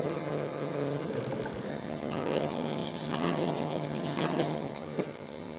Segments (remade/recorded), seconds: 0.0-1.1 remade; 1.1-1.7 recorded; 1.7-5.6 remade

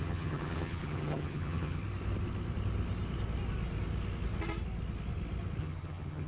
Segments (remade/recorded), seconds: 0.0-1.8 remade; 1.8-5.6 recorded; 5.6-6.3 remade

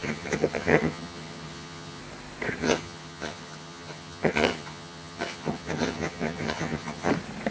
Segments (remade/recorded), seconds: 0.0-2.0 remade; 2.0-2.6 recorded; 2.6-7.1 remade; 7.1-7.5 recorded

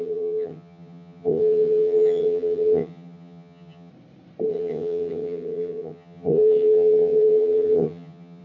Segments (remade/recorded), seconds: 0.0-3.9 remade; 3.9-4.5 recorded; 4.5-8.4 remade

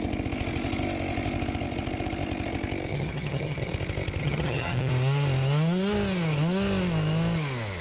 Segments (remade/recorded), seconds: 0.0-2.9 recorded; 2.9-3.7 remade; 3.7-4.2 recorded; 4.2-4.9 remade; 4.9-7.8 recorded

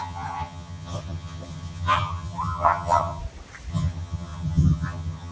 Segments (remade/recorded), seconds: 0.0-3.2 remade; 3.2-3.7 recorded; 3.7-5.3 remade